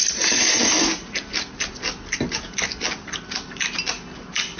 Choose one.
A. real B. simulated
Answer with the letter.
A